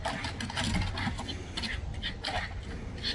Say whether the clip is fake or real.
real